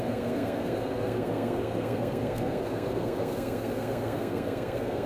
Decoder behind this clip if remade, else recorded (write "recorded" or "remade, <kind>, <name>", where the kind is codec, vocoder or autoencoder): remade, codec, SNAC